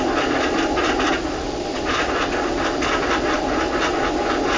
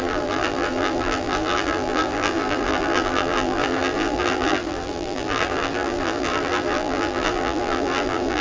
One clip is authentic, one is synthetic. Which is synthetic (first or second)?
second